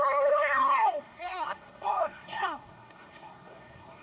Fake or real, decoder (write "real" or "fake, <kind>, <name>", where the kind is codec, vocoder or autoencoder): fake, codec, SNAC